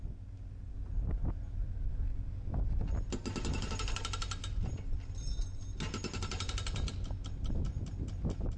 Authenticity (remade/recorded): recorded